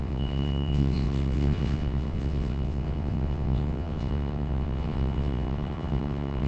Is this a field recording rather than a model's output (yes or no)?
no